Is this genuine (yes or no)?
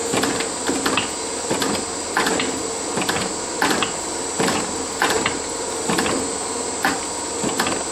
yes